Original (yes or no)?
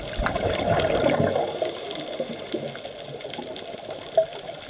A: yes